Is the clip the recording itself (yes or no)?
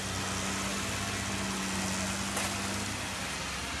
yes